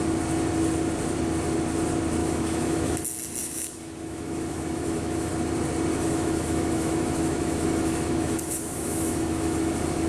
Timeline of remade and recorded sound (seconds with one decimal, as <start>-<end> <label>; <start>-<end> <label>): 0.0-2.2 recorded; 2.2-3.0 remade; 3.0-3.4 recorded; 3.4-5.3 remade; 5.3-5.9 recorded; 5.9-9.7 remade; 9.7-10.1 recorded